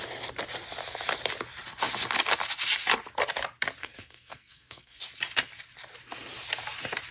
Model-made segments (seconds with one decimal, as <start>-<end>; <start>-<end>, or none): 3.8-5.0